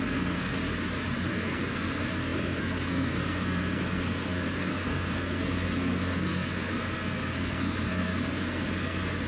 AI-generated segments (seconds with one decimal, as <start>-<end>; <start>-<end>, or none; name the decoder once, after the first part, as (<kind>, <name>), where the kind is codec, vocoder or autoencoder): 0.0-0.6 (codec, SNAC); 1.3-9.3